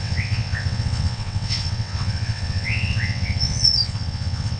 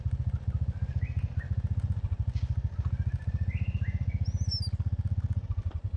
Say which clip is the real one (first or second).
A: second